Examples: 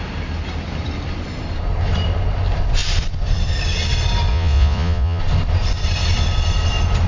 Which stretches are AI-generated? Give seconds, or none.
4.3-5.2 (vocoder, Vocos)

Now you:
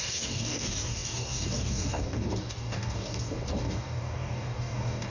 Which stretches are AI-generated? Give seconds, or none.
0.0-5.1 (codec, DAC)

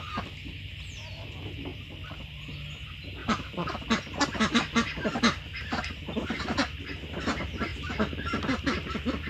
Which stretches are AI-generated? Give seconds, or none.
1.7-2.3 (vocoder, BigVGAN v2); 3.2-4.2

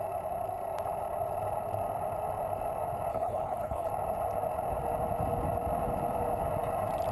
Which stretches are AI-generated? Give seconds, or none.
3.1-3.9 (codec, HILCodec)

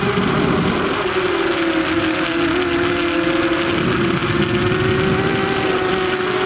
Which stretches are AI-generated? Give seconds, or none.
none

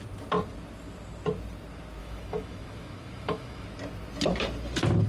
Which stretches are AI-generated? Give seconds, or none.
2.0-3.7 (autoencoder, DAC-VAE)